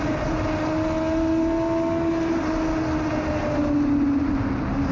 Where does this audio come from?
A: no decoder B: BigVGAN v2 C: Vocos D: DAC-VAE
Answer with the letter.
A